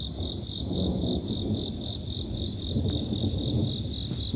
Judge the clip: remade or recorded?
recorded